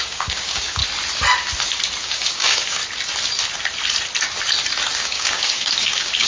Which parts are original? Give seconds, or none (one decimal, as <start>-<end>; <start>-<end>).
0.8-2.0; 2.8-4.9